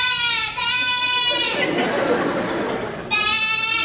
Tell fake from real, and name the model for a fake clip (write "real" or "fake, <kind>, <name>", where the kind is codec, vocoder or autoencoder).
real